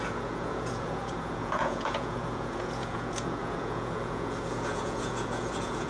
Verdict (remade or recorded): remade